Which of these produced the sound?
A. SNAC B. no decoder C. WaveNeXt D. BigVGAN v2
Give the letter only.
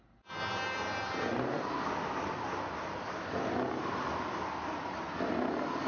B